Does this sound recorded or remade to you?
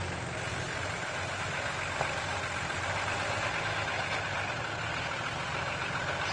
recorded